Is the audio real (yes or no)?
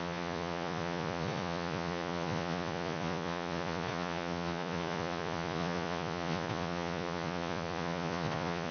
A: no